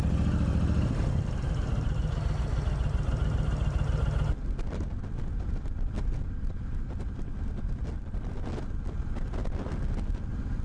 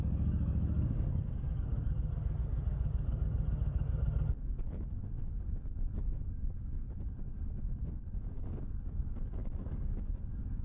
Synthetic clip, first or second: second